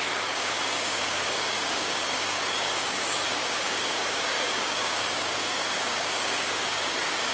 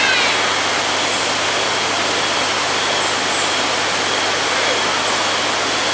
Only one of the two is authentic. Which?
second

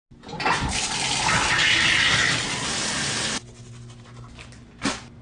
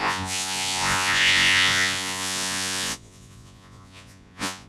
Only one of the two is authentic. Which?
first